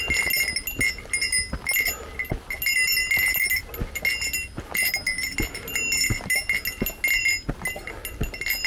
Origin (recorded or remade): recorded